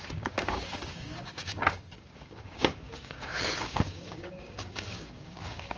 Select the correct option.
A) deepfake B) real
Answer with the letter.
A